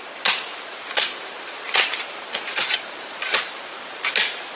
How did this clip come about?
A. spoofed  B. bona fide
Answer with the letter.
A